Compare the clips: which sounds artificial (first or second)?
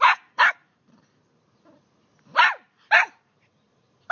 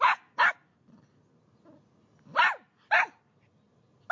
first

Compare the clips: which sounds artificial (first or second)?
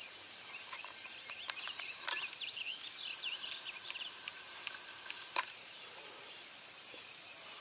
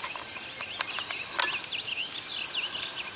first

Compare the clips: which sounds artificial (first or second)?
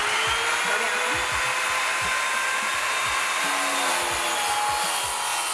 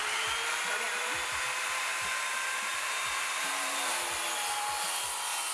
second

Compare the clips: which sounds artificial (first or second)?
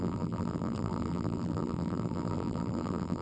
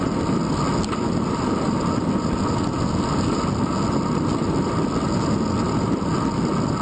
first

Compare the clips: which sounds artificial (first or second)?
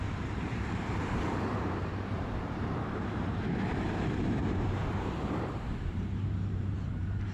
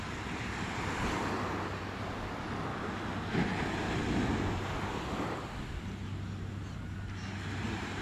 first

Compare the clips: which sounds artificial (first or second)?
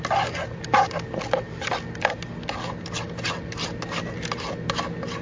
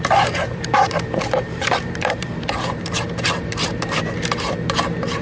second